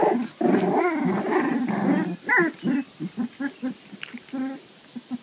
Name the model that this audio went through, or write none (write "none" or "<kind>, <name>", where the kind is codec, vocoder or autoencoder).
none